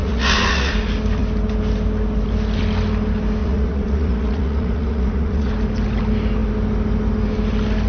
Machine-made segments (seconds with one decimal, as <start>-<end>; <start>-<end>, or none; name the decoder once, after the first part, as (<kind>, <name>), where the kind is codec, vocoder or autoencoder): 0.0-0.7 (vocoder, Vocos); 3.4-5.5